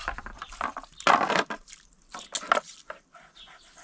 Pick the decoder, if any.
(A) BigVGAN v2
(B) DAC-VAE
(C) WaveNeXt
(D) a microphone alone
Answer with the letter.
D